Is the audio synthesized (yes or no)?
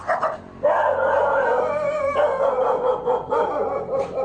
no